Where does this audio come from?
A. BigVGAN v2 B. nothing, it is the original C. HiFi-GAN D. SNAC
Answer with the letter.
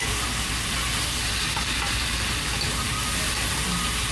B